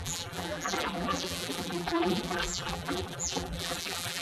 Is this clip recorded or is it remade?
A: remade